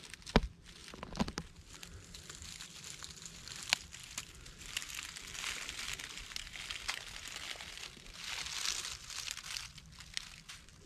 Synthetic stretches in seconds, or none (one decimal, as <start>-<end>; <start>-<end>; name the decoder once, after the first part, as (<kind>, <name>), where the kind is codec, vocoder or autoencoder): none